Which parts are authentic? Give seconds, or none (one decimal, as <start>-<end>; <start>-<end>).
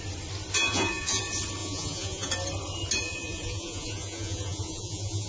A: 0.0-0.6; 1.2-1.6; 2.3-3.0